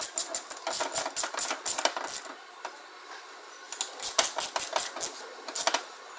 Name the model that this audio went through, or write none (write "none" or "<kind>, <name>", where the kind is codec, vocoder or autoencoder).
none